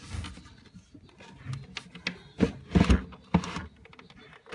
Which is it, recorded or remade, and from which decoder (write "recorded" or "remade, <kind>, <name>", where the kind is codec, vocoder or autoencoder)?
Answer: recorded